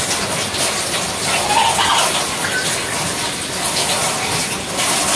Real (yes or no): yes